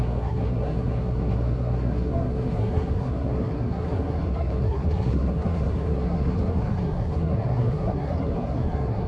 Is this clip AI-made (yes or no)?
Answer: yes